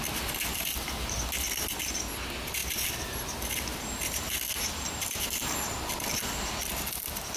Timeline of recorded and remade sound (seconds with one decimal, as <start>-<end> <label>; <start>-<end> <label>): 0.0-7.4 recorded